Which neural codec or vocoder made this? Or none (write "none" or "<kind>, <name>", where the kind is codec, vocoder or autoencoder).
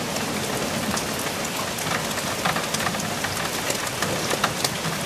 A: none